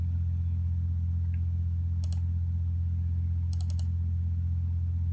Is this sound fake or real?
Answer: real